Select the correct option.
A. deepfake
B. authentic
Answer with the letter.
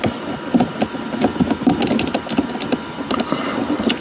B